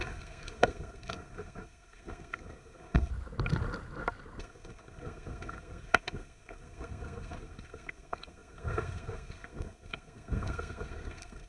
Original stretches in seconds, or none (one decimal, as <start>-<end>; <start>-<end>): 3.1-4.4